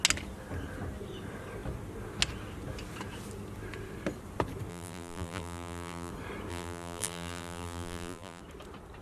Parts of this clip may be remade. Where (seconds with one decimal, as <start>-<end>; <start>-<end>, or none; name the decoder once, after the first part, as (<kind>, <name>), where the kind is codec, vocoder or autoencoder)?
4.7-6.1 (vocoder, BigVGAN v2); 6.5-8.4